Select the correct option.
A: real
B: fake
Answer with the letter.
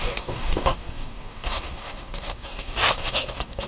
B